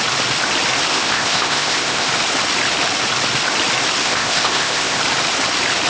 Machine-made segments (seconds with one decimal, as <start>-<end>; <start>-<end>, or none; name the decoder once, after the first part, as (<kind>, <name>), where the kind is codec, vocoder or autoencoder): 0.9-2.1 (codec, ZipCodec); 4.0-5.0